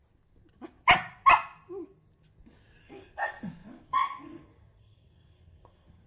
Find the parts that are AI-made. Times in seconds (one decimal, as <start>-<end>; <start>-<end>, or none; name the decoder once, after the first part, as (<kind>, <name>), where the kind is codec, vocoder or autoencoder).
2.8-6.1 (codec, SNAC)